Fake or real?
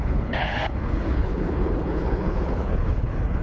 fake